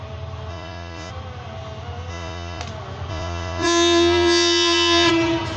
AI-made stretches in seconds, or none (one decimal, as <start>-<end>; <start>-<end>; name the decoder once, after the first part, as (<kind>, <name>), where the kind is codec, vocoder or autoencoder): 0.5-1.1 (vocoder, Vocos); 2.1-2.6; 3.1-5.1